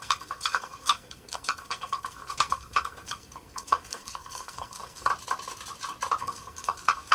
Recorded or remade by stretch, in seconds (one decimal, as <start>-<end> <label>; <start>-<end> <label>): 0.0-5.1 remade; 5.1-6.2 recorded; 6.2-7.1 remade